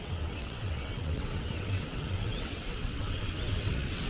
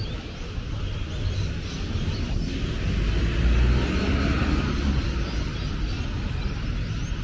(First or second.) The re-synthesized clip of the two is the first